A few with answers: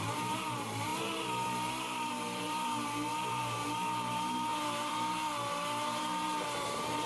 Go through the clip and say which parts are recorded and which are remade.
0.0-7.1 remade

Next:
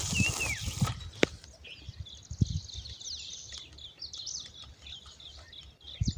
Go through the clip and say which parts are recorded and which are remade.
0.0-6.2 recorded

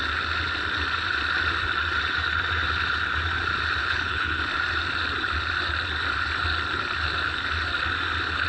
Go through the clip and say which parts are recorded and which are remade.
0.0-3.8 recorded; 3.8-4.4 remade; 4.4-8.5 recorded

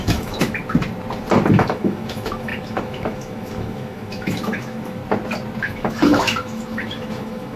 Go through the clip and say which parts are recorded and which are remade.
0.0-0.6 remade; 0.6-1.5 recorded; 1.5-5.0 remade; 5.0-5.6 recorded; 5.6-7.6 remade

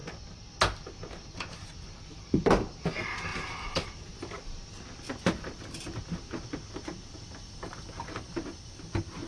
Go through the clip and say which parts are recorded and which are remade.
0.0-0.8 recorded; 0.8-4.6 remade; 4.6-6.0 recorded; 6.0-9.3 remade

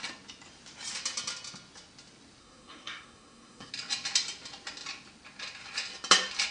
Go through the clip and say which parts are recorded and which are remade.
0.0-2.4 recorded; 2.4-3.7 remade; 3.7-6.5 recorded

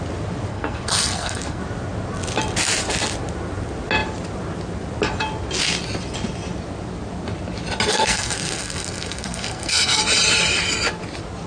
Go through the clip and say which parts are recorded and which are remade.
0.0-0.5 recorded; 0.5-1.6 remade; 1.6-7.9 recorded; 7.9-10.0 remade; 10.0-11.5 recorded

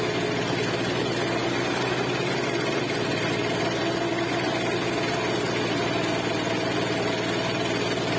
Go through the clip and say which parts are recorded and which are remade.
0.0-8.2 recorded